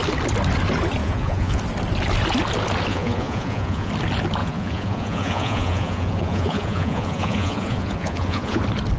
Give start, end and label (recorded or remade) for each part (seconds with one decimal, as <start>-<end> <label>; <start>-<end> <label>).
0.0-1.0 recorded; 1.0-1.6 remade; 1.6-2.9 recorded; 2.9-3.9 remade; 3.9-4.4 recorded; 4.4-8.6 remade; 8.6-9.0 recorded